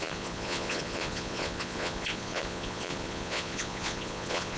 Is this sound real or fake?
fake